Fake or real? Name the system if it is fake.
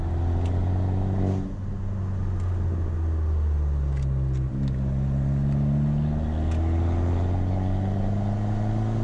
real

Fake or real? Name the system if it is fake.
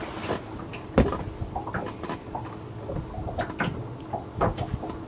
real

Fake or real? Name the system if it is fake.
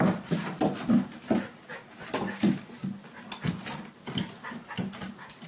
real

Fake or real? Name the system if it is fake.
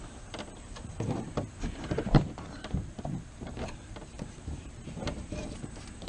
fake, vocoder, BigVGAN v2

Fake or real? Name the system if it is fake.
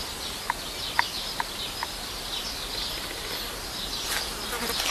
real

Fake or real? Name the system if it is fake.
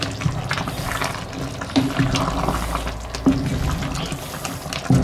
real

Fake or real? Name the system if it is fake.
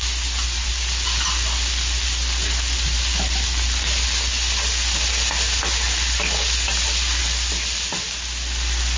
real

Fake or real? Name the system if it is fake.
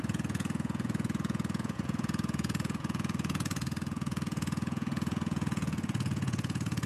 fake, vocoder, Vocos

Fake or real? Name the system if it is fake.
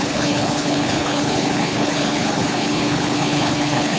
fake, codec, HILCodec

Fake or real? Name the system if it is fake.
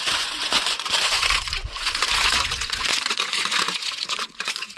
fake, vocoder, Vocos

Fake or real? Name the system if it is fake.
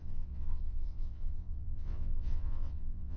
fake, vocoder, WaveNeXt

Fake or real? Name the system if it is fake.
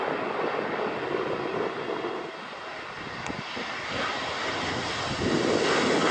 real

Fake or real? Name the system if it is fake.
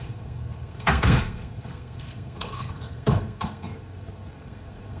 fake, codec, SNAC